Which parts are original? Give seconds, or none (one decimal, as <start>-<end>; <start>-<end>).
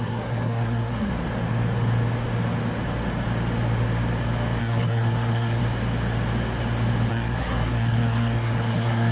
1.1-4.6; 5.6-7.1